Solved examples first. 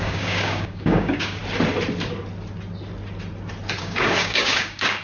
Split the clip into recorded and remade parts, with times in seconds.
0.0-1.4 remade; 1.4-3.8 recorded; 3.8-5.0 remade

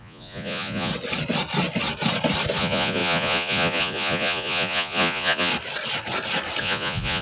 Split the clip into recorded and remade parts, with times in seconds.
0.0-0.9 remade; 0.9-2.6 recorded; 2.6-5.5 remade; 5.5-6.6 recorded; 6.6-7.2 remade

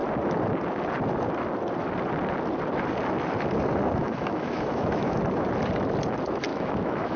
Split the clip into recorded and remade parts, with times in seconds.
0.0-4.0 recorded; 4.0-5.2 remade; 5.2-6.5 recorded; 6.5-7.2 remade

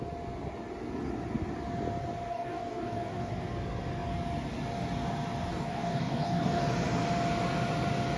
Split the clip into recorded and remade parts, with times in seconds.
0.0-2.3 recorded; 2.3-3.3 remade; 3.3-5.5 recorded; 5.5-6.6 remade; 6.6-8.2 recorded

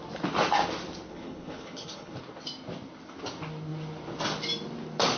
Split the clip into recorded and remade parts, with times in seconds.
0.0-1.1 recorded; 1.1-2.2 remade; 2.2-5.2 recorded

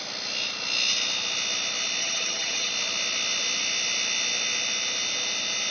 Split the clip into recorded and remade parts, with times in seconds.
0.0-2.0 recorded; 2.0-2.7 remade; 2.7-5.7 recorded

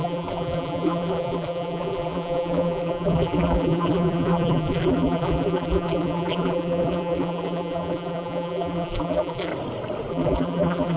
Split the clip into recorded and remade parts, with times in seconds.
0.0-9.5 remade; 9.5-10.1 recorded; 10.1-11.0 remade

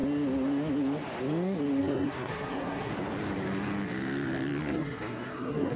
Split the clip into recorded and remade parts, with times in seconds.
0.0-1.8 recorded; 1.8-2.9 remade; 2.9-4.6 recorded; 4.6-5.8 remade